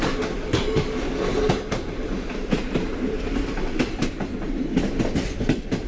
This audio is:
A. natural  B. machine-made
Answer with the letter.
A